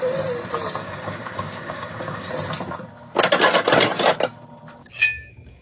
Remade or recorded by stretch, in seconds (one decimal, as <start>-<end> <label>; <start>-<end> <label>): 0.0-0.8 recorded; 0.8-2.3 remade; 2.3-4.8 recorded; 4.8-5.6 remade